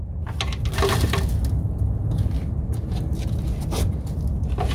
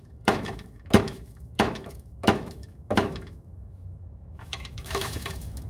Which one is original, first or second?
first